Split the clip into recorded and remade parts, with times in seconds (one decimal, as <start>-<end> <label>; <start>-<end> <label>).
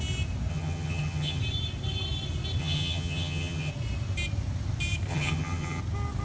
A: 0.0-0.5 recorded; 0.5-1.4 remade; 1.4-2.6 recorded; 2.6-3.7 remade; 3.7-5.1 recorded; 5.1-5.8 remade; 5.8-6.2 recorded